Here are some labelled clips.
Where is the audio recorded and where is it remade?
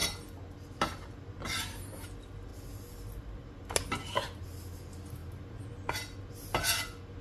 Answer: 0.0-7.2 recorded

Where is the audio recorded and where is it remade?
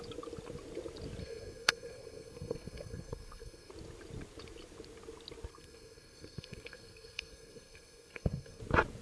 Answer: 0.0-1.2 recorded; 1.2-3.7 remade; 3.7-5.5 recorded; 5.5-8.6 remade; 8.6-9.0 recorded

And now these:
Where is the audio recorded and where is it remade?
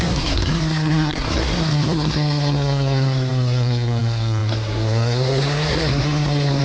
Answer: 0.0-6.6 remade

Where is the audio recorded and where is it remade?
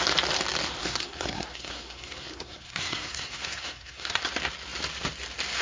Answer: 0.0-0.8 recorded; 0.8-4.2 remade; 4.2-5.6 recorded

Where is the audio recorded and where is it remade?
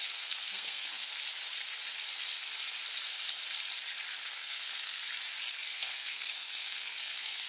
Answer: 0.0-0.9 remade; 0.9-4.2 recorded; 4.2-5.0 remade; 5.0-5.7 recorded; 5.7-7.5 remade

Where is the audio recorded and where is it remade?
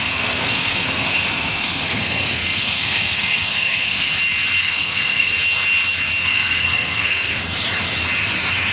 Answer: 0.0-4.1 remade; 4.1-4.6 recorded; 4.6-5.4 remade; 5.4-6.2 recorded; 6.2-7.4 remade; 7.4-8.7 recorded